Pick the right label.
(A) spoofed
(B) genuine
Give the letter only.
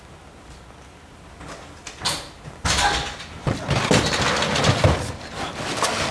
B